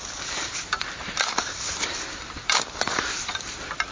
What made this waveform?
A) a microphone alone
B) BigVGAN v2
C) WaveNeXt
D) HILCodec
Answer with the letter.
B